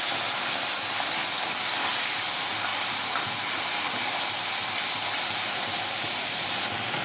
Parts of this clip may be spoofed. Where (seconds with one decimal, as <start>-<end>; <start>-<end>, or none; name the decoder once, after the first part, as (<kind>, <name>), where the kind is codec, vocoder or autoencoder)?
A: 2.7-6.4 (vocoder, BigVGAN v2)